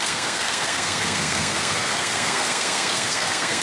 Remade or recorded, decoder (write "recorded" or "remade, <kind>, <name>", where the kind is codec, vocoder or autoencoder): remade, codec, SNAC